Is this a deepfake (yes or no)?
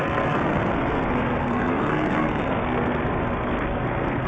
yes